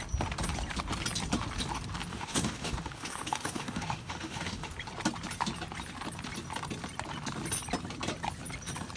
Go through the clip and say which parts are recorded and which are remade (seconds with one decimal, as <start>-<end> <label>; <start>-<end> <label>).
0.0-2.1 recorded; 2.1-4.7 remade; 4.7-9.0 recorded